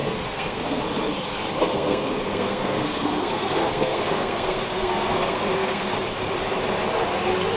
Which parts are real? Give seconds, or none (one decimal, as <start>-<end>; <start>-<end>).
0.8-1.6; 5.9-7.6